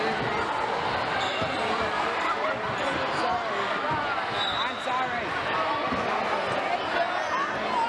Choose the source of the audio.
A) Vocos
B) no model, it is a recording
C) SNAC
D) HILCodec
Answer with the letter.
B